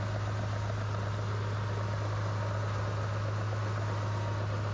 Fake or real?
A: real